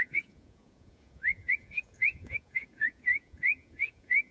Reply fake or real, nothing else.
fake